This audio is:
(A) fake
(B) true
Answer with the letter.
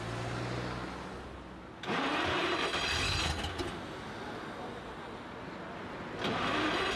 B